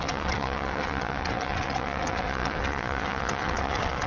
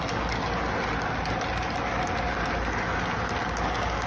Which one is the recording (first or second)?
second